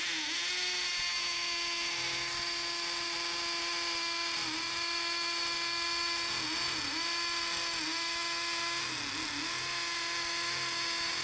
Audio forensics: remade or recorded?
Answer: recorded